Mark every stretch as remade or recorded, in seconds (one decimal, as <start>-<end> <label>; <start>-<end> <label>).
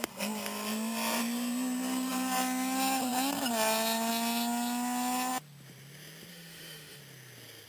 0.0-6.3 recorded; 6.3-7.0 remade; 7.0-7.7 recorded